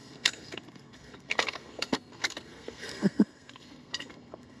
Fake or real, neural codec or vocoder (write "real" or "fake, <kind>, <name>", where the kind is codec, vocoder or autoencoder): fake, codec, SNAC